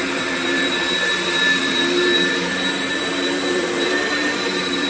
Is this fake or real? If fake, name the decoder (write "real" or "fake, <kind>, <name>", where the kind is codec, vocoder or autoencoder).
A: fake, vocoder, BigVGAN v2